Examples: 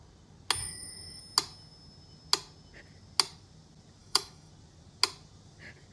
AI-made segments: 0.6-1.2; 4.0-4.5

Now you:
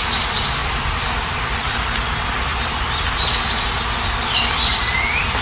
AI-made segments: none